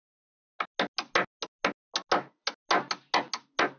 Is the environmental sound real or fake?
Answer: real